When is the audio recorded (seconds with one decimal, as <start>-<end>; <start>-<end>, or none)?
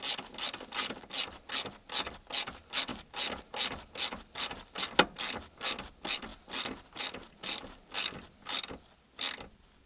0.0-9.9